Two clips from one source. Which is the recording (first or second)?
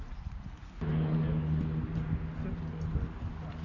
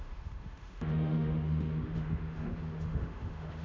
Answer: first